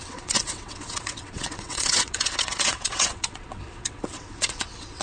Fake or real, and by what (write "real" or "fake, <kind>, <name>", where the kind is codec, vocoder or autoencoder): fake, vocoder, WaveNeXt